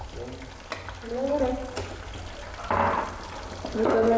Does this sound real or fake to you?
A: real